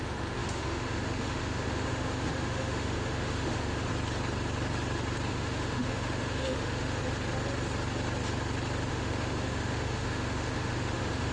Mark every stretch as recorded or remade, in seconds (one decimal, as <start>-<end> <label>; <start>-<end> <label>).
0.0-3.9 remade; 3.9-5.3 recorded; 5.3-7.0 remade; 7.0-8.9 recorded; 8.9-11.3 remade

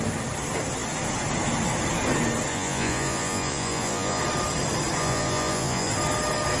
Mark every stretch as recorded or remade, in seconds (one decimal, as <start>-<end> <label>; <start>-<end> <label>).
0.0-2.5 recorded; 2.5-4.2 remade; 4.2-5.0 recorded; 5.0-5.9 remade; 5.9-6.6 recorded

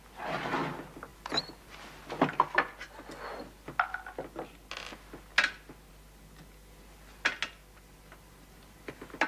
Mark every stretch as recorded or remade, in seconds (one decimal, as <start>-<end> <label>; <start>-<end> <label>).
0.0-9.3 recorded

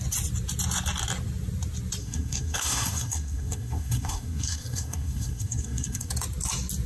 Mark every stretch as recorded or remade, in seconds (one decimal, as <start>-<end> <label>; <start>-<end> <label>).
0.0-2.0 recorded; 2.0-6.1 remade; 6.1-6.9 recorded

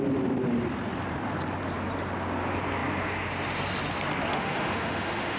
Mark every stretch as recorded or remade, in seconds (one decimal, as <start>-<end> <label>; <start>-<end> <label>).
0.0-4.3 recorded; 4.3-5.4 remade

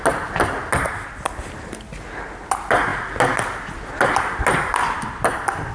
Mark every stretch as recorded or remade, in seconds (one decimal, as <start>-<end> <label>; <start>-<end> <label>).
0.0-5.7 recorded

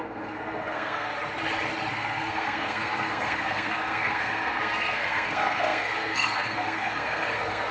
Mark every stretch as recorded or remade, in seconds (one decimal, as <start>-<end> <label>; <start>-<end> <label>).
0.0-1.1 remade; 1.1-1.9 recorded; 1.9-7.7 remade